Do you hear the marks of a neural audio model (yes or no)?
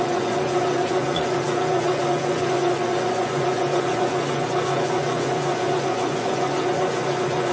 yes